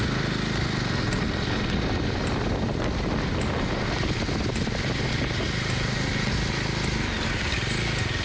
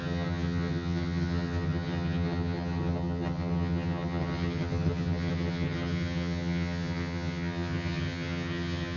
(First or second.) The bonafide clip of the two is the first